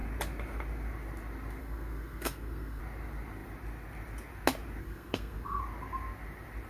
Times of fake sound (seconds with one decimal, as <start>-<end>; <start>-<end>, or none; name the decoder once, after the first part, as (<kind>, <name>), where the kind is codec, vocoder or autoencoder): 1.6-2.8 (codec, SNAC); 4.8-5.6